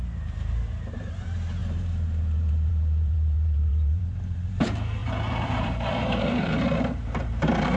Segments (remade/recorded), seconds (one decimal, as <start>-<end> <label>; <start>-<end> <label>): 0.0-7.8 remade